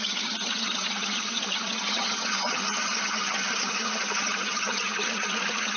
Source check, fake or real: fake